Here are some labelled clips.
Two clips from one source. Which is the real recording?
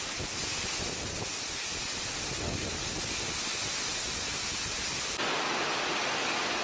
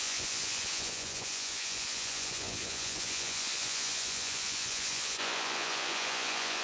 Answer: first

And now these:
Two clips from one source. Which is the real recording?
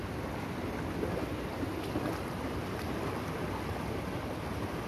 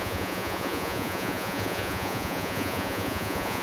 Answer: first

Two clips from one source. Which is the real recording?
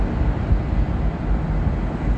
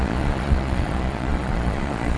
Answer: first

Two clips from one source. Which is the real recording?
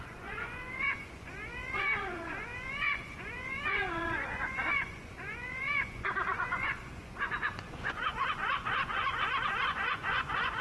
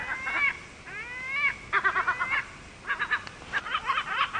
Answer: second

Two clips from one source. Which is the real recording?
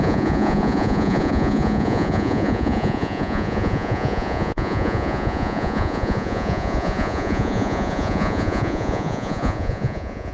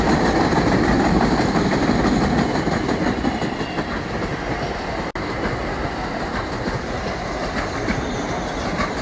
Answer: second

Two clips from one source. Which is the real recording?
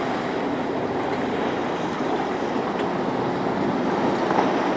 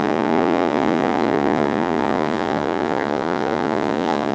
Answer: first